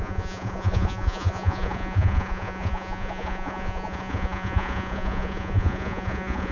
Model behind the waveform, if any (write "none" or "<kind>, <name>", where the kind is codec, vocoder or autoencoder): vocoder, Vocos